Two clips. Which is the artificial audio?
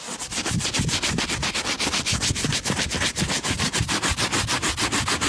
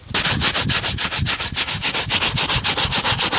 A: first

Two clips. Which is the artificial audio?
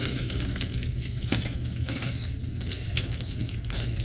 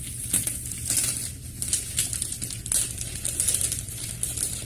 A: first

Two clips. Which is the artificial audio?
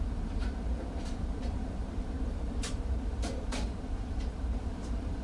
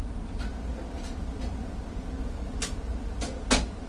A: first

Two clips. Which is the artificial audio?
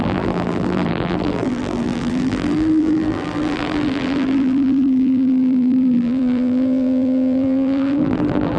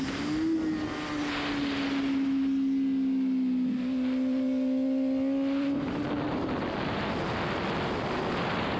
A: first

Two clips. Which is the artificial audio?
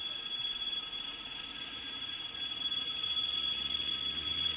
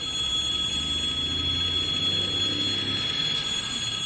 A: first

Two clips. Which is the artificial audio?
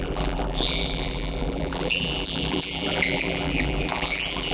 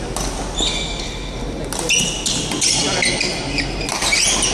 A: first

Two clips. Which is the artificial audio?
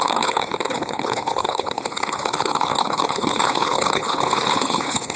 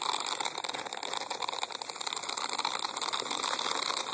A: first